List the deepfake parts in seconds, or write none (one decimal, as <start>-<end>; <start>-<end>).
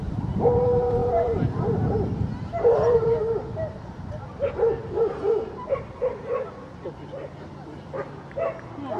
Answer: 1.0-3.2